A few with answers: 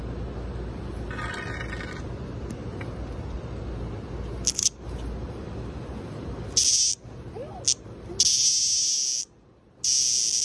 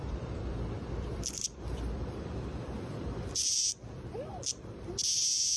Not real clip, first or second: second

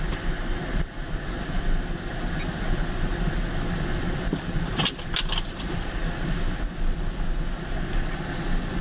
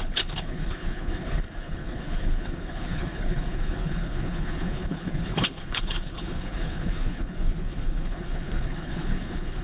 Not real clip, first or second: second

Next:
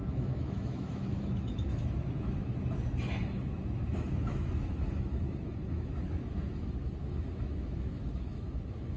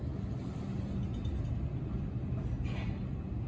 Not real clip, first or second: first